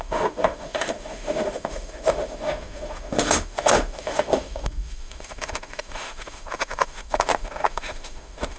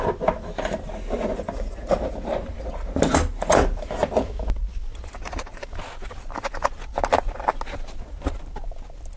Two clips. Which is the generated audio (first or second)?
first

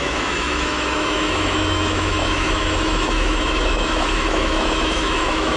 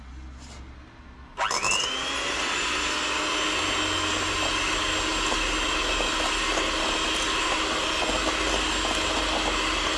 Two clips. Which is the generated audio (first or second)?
first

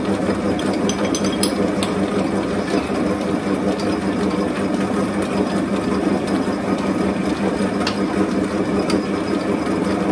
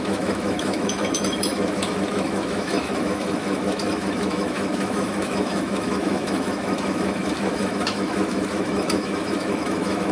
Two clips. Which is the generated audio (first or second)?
second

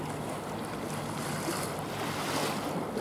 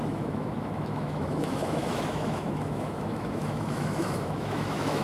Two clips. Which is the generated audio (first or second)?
second